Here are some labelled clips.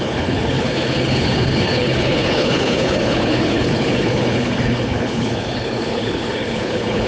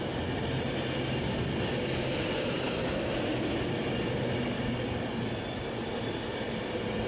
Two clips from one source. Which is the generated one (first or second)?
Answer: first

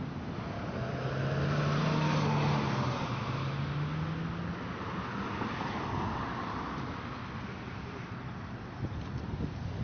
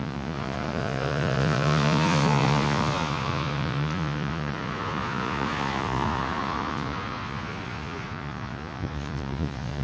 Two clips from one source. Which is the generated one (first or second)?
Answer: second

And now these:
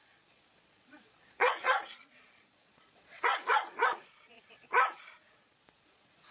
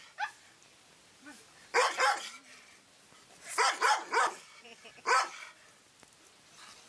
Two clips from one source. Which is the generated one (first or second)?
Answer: first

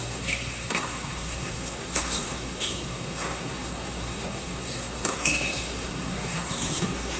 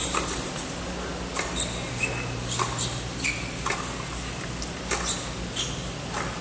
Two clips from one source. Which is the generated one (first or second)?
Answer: first